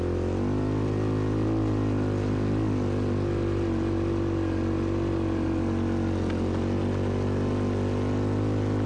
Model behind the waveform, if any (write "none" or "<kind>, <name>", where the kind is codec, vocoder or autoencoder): none